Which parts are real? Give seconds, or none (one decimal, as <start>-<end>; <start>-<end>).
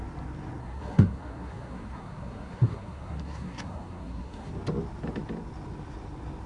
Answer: 0.0-0.6; 4.5-6.5